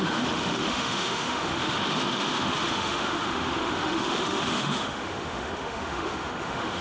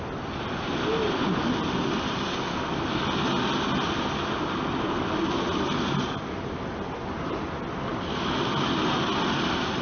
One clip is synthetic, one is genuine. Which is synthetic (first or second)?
first